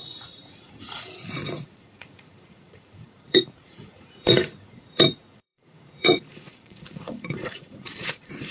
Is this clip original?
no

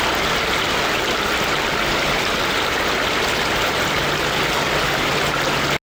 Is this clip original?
yes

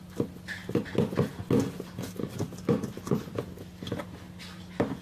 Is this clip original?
yes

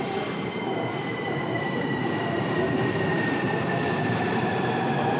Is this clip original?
no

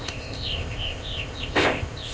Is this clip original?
no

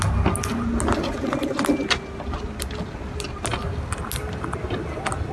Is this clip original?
yes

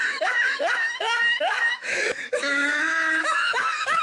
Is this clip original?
no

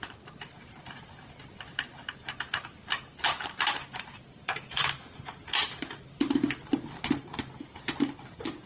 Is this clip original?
no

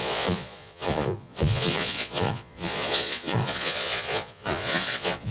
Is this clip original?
no